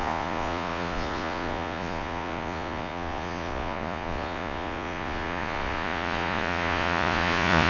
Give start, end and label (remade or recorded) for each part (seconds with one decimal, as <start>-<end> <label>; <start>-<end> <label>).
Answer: 0.0-7.7 remade